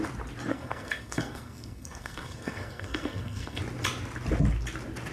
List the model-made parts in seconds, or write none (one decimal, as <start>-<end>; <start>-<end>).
0.5-3.6